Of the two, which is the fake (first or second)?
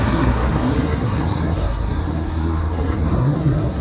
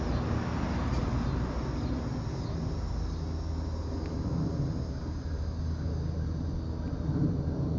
first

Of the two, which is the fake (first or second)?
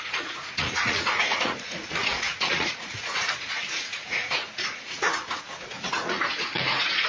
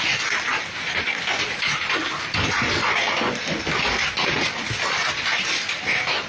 first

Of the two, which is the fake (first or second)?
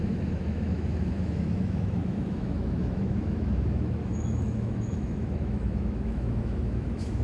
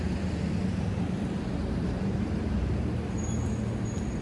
first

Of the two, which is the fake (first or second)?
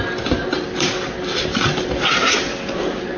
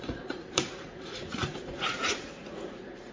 second